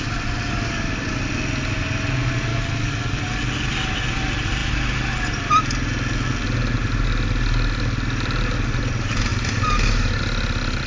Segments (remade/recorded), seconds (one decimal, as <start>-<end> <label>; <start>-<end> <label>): 0.0-2.5 recorded; 2.5-3.2 remade; 3.2-10.9 recorded